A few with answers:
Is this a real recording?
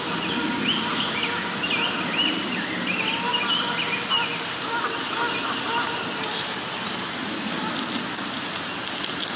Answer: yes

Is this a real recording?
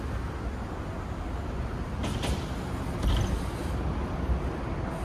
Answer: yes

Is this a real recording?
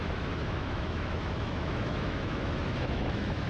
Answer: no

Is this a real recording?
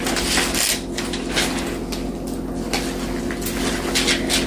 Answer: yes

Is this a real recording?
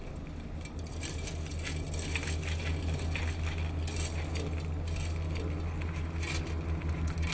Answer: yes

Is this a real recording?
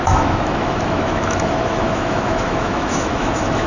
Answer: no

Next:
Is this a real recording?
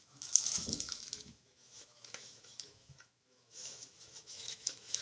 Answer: no